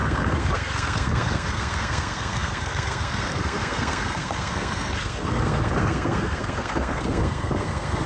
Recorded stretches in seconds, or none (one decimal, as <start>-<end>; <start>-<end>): none

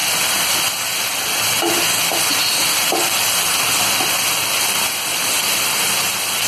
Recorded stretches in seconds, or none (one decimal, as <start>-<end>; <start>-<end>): 0.0-6.5

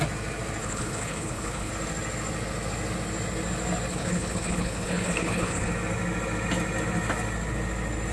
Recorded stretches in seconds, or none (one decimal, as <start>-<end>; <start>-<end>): 0.0-0.6; 1.7-3.9; 5.7-8.1

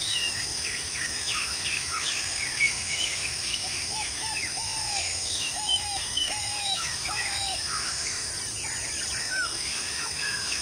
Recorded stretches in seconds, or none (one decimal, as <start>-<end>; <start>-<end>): 8.3-9.2

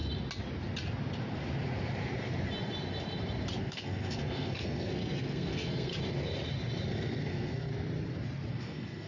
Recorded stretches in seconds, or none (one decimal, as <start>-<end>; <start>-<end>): 0.0-3.6; 5.9-6.9; 7.7-8.5

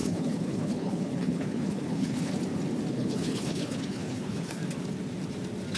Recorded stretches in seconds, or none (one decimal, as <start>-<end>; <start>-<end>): 2.3-2.9; 4.6-5.8

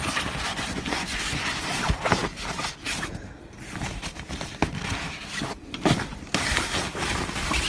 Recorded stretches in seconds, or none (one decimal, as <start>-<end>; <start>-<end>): 0.0-0.5; 1.6-7.7

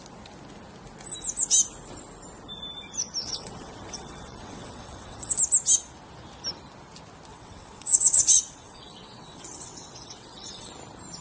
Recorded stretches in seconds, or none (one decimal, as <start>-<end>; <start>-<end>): 0.0-3.2; 5.4-7.3; 10.7-11.2